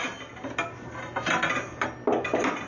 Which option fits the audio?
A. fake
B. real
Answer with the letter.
B